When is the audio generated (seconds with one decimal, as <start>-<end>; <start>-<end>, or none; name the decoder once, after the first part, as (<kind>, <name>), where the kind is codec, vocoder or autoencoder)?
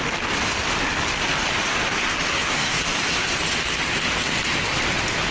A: 2.3-2.8 (codec, SNAC)